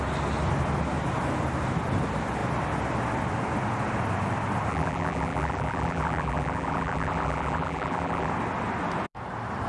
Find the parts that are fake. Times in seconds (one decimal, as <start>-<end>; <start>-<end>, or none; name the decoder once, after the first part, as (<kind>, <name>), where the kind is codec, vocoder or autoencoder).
4.7-8.3 (vocoder, BigVGAN v2)

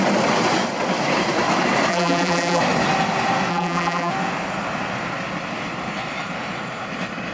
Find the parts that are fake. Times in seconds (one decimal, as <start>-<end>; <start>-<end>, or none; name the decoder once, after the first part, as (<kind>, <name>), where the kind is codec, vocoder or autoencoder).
1.9-2.6 (vocoder, BigVGAN v2); 3.5-4.1

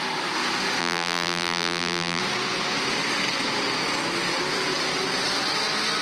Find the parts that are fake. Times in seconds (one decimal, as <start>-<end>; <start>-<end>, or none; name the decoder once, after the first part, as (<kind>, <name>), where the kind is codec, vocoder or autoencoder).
0.8-2.2 (vocoder, BigVGAN v2)